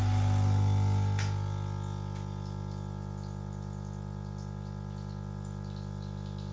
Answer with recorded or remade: recorded